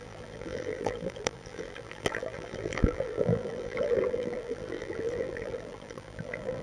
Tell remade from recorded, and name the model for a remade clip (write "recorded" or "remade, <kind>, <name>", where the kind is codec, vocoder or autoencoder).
remade, vocoder, BigVGAN v2